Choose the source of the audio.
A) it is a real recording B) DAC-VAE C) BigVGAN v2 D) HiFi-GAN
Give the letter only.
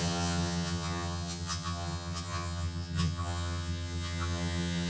D